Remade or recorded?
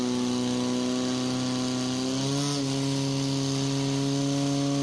recorded